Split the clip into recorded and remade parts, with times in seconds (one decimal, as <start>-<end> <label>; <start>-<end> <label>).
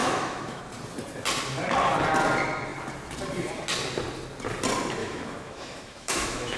0.0-0.6 remade; 0.6-5.0 recorded; 5.0-6.6 remade